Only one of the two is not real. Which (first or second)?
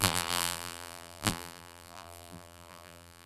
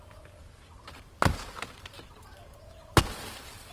first